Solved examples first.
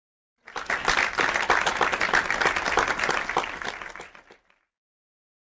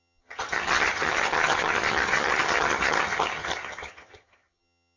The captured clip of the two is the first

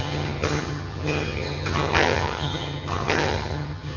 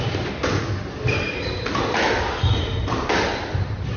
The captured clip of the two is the second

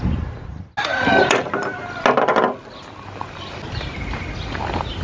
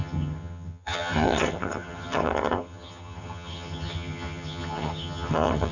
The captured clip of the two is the first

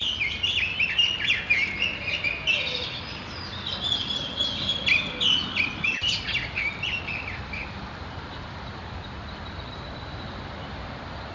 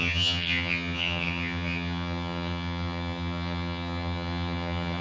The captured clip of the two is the first